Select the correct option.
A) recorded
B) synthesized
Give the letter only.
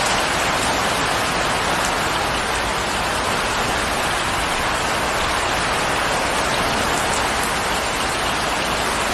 A